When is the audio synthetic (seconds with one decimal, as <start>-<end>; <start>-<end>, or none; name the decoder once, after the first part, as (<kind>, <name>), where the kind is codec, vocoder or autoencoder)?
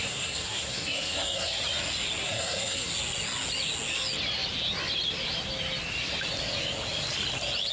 0.0-1.6 (codec, SNAC); 2.2-2.9